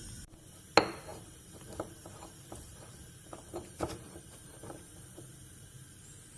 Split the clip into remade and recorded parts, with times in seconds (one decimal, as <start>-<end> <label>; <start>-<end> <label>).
0.0-1.1 recorded; 1.1-4.9 remade; 4.9-6.4 recorded